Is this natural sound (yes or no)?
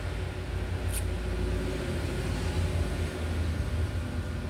yes